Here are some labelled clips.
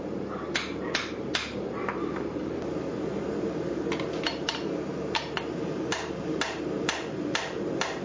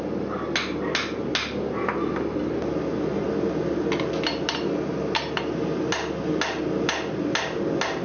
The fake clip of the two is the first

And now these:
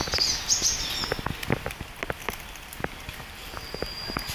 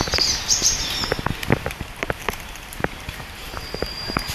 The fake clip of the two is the second